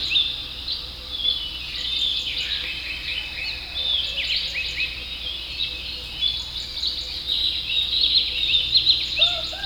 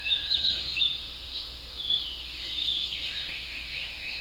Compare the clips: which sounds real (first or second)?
first